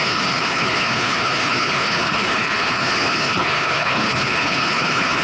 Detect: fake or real fake